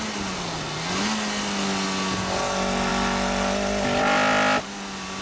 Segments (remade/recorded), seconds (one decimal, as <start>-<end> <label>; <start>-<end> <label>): 0.0-5.2 recorded

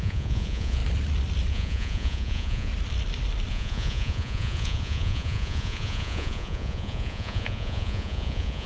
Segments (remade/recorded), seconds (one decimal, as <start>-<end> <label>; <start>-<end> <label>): 0.0-0.8 remade; 0.8-1.5 recorded; 1.5-2.7 remade; 2.7-3.5 recorded; 3.5-8.7 remade

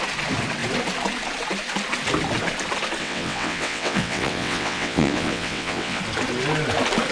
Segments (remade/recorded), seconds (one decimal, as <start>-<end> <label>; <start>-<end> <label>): 0.0-3.0 recorded; 3.0-6.0 remade; 6.0-7.1 recorded

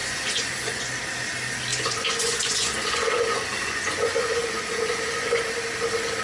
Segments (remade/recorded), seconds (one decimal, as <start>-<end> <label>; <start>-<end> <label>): 0.0-0.9 remade; 0.9-1.7 recorded; 1.7-5.4 remade; 5.4-6.2 recorded

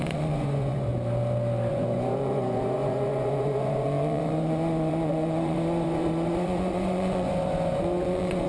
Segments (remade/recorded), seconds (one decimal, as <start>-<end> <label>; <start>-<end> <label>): 0.0-0.9 remade; 0.9-1.7 recorded; 1.7-8.5 remade

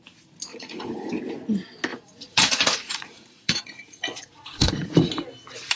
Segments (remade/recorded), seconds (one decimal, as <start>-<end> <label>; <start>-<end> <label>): 0.0-0.5 recorded; 0.5-1.1 remade; 1.1-1.9 recorded; 1.9-5.1 remade; 5.1-5.8 recorded

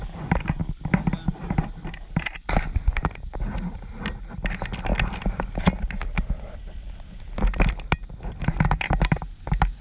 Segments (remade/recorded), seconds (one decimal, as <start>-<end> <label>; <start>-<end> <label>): 0.0-9.8 recorded